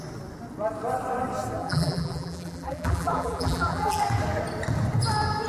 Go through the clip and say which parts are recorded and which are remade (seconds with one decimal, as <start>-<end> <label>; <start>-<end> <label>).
0.0-1.6 recorded; 1.6-4.0 remade; 4.0-5.5 recorded